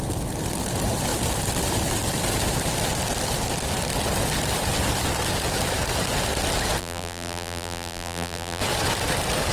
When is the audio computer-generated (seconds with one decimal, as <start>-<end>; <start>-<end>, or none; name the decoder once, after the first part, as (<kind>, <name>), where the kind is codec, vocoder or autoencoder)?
6.8-8.6 (vocoder, BigVGAN v2)